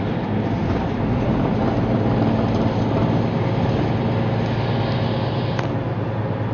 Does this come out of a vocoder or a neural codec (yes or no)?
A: no